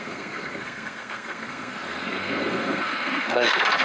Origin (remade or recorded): remade